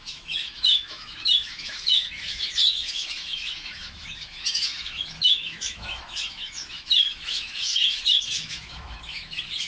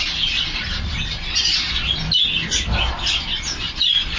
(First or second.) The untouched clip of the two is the second